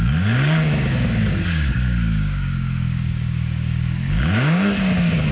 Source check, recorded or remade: remade